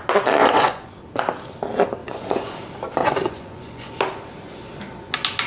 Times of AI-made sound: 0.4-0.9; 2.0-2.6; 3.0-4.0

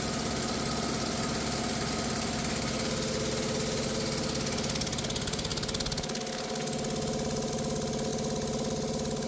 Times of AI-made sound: none

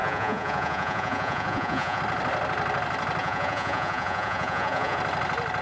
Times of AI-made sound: 0.0-2.0; 3.2-5.0

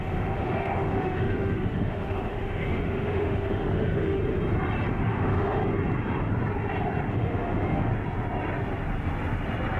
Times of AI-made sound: 0.0-4.2; 4.9-5.6; 7.1-7.9

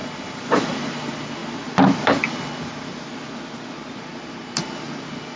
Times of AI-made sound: none